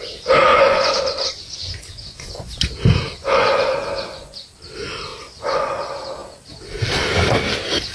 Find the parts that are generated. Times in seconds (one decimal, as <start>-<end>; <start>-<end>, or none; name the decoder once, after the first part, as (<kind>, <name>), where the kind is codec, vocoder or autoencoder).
0.5-2.7 (vocoder, Vocos); 3.2-4.5; 5.1-5.7

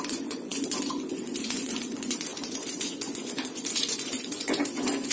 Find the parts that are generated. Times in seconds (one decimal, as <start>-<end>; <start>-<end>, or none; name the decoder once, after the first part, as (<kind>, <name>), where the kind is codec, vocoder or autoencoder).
0.0-5.1 (vocoder, Vocos)

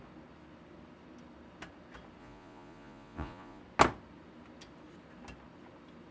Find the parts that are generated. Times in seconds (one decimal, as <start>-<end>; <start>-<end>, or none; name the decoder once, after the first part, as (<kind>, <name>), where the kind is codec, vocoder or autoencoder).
2.2-3.6 (vocoder, Vocos)

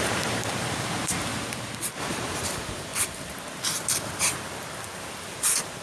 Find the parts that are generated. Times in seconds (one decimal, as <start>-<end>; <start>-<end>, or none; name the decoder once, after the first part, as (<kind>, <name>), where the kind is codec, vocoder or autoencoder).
0.0-1.3 (vocoder, BigVGAN v2); 2.0-2.9; 5.3-5.8

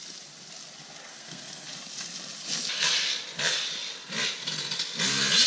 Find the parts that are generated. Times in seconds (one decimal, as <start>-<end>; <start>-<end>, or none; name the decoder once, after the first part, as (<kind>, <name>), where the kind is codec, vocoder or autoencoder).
1.1-1.7 (codec, SNAC)

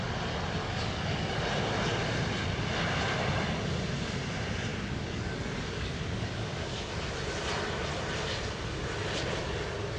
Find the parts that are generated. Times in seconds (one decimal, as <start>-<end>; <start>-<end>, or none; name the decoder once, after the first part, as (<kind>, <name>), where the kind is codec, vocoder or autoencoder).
0.6-1.4 (codec, DAC); 4.7-6.9